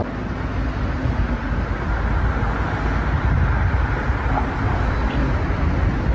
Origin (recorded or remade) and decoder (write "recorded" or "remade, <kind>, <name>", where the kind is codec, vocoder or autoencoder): recorded